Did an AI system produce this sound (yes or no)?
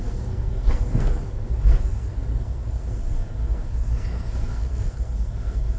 yes